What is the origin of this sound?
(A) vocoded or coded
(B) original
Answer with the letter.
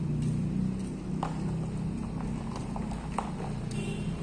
B